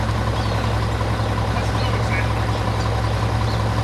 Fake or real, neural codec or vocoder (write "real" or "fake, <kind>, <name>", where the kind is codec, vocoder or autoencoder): real